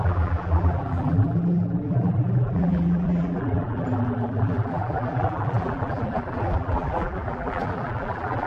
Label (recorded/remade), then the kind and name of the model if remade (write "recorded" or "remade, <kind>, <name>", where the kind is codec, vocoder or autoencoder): remade, vocoder, BigVGAN v2